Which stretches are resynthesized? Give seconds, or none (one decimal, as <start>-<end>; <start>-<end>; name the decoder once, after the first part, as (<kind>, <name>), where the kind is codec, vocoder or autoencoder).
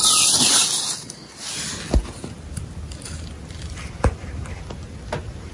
none